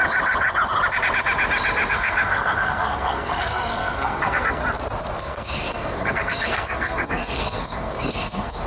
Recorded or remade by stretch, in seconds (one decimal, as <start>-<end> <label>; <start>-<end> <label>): 0.0-1.9 recorded; 1.9-4.6 remade; 4.6-5.2 recorded; 5.2-8.7 remade